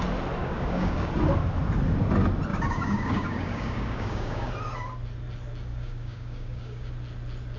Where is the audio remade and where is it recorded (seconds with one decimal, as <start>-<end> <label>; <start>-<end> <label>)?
0.0-0.4 recorded; 0.4-1.1 remade; 1.1-2.5 recorded; 2.5-4.5 remade; 4.5-5.7 recorded; 5.7-6.9 remade; 6.9-7.6 recorded